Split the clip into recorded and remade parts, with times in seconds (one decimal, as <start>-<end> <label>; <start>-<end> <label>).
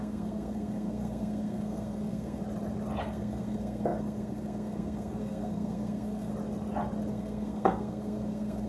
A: 0.0-2.4 remade; 2.4-3.0 recorded; 3.0-6.3 remade; 6.3-7.1 recorded; 7.1-8.7 remade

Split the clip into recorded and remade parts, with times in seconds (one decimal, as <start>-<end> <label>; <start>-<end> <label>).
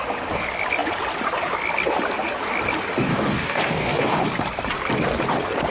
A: 0.0-3.1 recorded; 3.1-4.2 remade; 4.2-5.7 recorded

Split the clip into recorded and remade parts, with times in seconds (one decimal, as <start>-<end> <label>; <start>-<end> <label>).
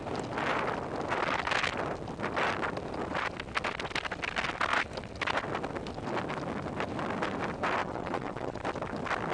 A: 0.0-7.8 recorded; 7.8-8.6 remade; 8.6-9.3 recorded